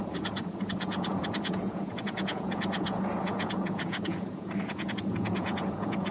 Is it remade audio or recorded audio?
remade